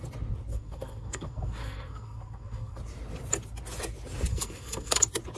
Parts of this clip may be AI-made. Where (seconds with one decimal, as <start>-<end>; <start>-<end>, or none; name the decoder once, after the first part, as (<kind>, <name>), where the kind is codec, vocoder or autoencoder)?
0.5-2.8 (codec, SNAC); 4.3-5.0